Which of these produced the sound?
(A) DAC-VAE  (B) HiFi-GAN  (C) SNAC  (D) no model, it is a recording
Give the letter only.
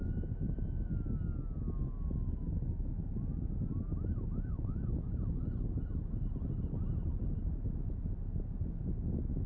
D